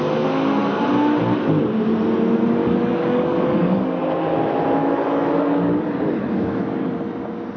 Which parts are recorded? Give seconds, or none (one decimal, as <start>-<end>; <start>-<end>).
0.0-2.6; 4.0-4.8; 6.9-7.6